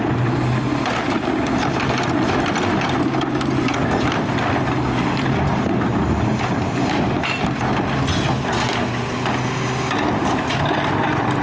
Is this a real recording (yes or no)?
yes